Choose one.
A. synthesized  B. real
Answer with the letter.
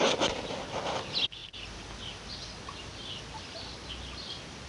B